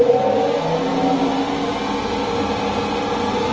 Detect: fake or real real